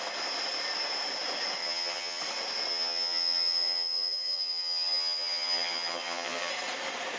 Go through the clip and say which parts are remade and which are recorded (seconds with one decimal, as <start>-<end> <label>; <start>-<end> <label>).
0.0-1.6 recorded; 1.6-2.2 remade; 2.2-2.7 recorded; 2.7-6.5 remade; 6.5-7.2 recorded